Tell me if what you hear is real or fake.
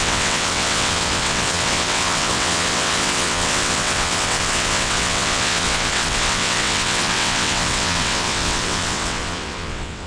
fake